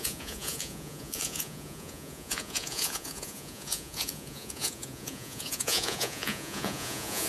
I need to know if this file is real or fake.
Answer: fake